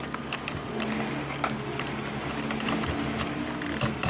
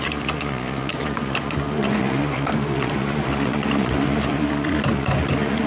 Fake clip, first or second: second